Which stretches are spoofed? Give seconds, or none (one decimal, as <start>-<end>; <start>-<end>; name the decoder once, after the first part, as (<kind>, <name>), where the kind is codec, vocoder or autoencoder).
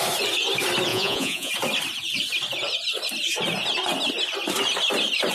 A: 0.9-1.5 (vocoder, Vocos)